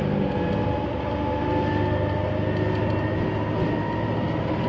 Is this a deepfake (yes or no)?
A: no